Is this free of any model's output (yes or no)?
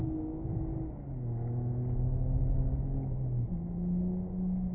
yes